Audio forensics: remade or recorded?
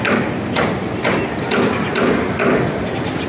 recorded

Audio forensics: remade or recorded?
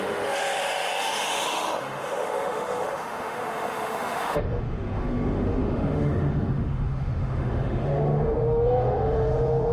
remade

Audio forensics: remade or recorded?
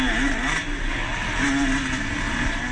recorded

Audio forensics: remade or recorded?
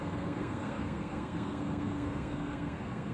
remade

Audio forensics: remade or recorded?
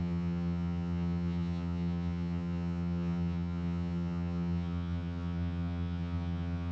remade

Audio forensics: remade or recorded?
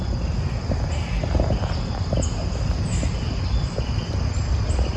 recorded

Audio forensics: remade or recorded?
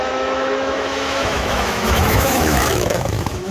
remade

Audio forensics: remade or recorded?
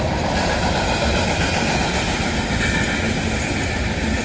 recorded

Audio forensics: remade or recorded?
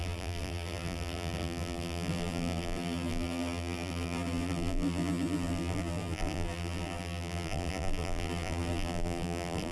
remade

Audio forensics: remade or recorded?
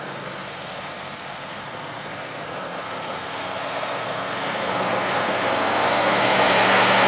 remade